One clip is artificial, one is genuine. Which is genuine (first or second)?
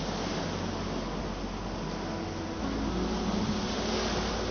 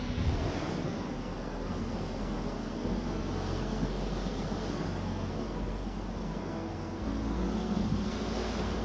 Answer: first